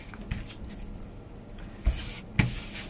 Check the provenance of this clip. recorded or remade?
recorded